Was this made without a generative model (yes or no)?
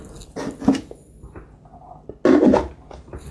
yes